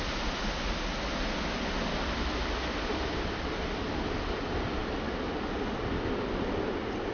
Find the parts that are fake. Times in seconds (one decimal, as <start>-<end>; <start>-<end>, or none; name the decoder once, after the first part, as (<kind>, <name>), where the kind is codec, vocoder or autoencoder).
none